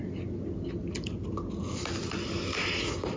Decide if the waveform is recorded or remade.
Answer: recorded